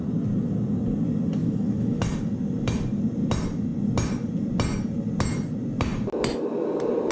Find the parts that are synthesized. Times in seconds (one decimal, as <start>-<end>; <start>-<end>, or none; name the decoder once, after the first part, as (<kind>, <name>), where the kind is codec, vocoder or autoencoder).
1.4-2.0 (autoencoder, DAC-VAE)